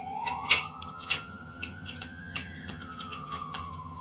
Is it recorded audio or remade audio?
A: remade